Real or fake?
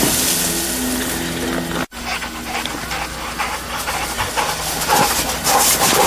real